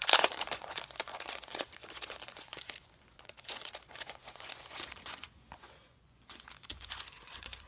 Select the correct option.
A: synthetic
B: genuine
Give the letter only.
A